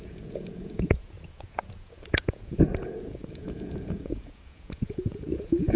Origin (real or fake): fake